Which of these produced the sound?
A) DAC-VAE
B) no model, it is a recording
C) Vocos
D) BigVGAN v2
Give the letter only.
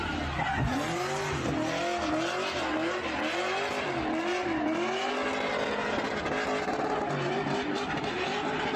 B